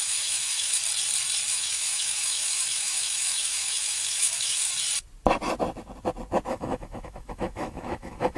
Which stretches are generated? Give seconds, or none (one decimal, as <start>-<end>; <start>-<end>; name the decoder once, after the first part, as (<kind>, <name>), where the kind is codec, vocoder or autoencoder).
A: 0.0-0.8 (autoencoder, DAC-VAE); 1.5-4.7; 6.5-8.4